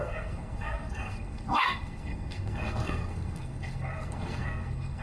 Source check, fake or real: fake